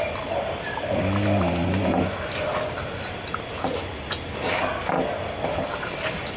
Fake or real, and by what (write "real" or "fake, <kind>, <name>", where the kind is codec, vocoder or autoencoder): real